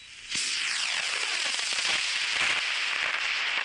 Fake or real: real